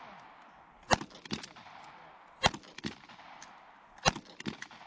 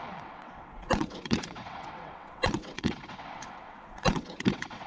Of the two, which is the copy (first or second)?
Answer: second